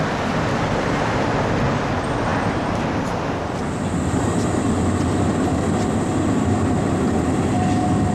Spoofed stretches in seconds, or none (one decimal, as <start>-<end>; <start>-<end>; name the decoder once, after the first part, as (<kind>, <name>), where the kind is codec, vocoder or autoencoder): none